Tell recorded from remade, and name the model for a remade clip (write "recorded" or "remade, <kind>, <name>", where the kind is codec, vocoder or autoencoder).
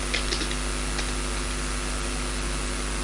recorded